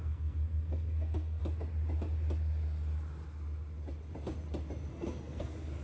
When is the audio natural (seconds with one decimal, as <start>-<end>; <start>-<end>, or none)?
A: 1.4-4.9